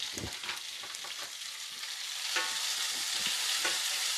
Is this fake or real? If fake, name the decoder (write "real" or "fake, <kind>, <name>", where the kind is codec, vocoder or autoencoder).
real